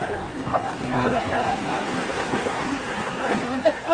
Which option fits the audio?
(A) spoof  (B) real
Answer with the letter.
A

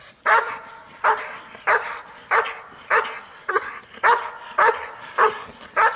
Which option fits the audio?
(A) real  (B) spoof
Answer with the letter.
A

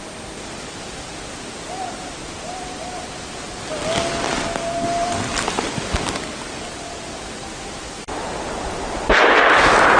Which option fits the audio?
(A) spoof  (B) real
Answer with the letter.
B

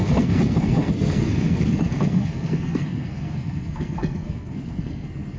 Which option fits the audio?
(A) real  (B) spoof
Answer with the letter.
B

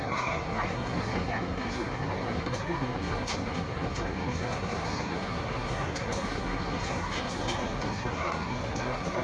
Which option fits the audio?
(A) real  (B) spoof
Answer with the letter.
B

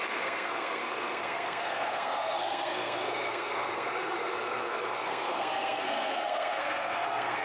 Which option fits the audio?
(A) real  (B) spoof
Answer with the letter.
B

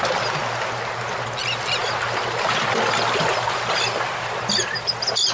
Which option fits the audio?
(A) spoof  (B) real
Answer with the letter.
B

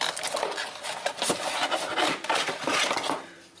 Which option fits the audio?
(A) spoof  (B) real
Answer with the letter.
B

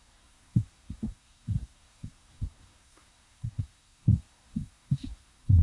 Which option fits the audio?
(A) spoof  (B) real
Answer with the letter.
A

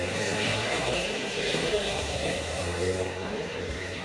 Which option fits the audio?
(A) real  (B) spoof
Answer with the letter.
B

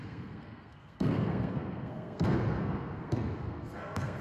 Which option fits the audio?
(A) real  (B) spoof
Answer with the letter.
B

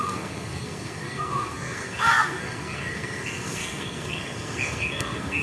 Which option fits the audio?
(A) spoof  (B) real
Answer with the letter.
A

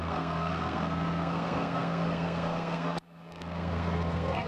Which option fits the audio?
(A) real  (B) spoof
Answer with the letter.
B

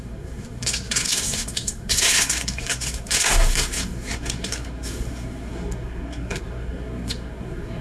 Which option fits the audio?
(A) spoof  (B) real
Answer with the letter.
A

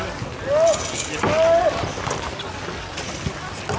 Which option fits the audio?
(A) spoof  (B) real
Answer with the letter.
B